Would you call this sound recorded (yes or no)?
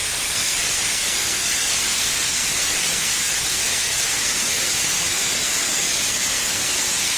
no